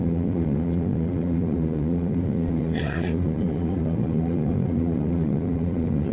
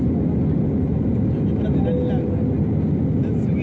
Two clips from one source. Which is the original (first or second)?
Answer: second